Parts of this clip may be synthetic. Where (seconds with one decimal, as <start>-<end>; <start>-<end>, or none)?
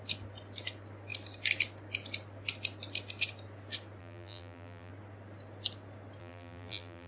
4.0-4.9; 6.2-7.1